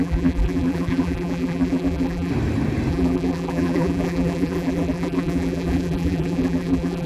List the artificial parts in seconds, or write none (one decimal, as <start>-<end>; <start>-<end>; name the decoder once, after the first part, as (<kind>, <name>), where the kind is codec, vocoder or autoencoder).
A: 0.0-2.3 (vocoder, BigVGAN v2); 2.9-7.1